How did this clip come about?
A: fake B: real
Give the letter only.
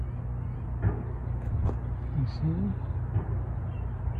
B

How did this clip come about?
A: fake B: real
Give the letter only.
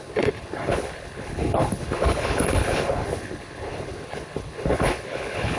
A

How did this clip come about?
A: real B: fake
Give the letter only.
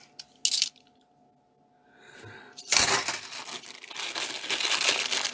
A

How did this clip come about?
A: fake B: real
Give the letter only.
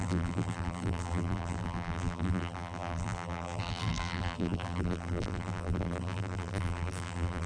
A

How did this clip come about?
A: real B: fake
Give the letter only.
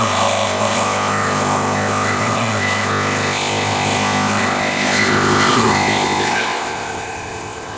B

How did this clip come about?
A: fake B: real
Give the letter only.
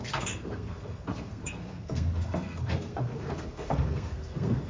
A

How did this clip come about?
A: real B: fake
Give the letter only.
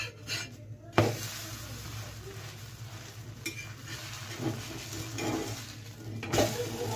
A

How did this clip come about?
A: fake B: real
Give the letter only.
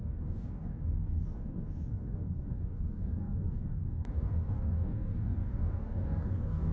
A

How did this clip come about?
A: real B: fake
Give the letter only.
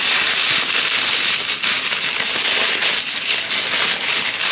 A